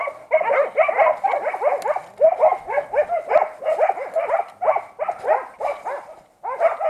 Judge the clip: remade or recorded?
recorded